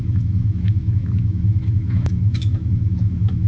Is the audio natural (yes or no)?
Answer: no